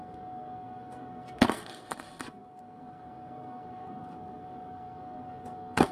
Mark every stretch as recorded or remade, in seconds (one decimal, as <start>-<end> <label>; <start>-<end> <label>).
0.0-5.9 remade